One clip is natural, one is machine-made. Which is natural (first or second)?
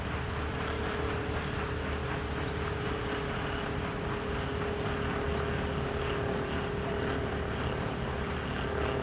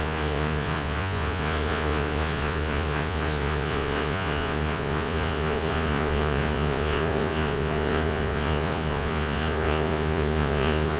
first